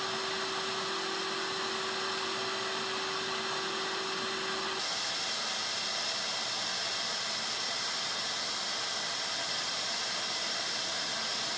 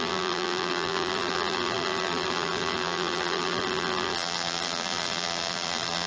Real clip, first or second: first